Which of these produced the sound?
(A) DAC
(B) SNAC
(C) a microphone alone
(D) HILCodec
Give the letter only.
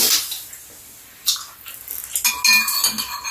C